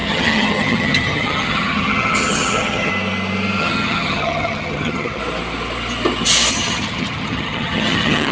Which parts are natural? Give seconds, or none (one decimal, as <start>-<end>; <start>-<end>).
2.9-3.6; 5.2-6.5